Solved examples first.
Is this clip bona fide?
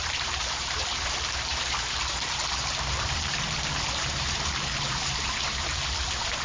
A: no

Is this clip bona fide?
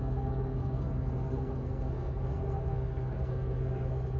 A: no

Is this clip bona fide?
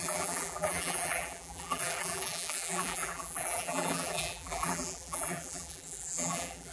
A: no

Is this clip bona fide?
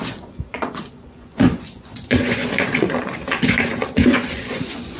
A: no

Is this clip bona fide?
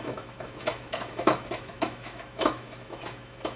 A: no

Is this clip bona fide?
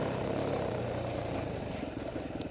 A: no